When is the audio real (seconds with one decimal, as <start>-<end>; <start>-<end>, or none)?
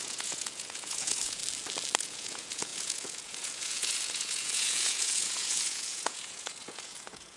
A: 1.4-2.0